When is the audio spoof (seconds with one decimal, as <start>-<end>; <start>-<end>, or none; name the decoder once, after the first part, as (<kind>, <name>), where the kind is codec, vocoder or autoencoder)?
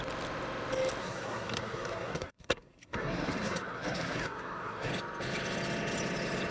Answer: 1.0-4.9 (codec, SNAC)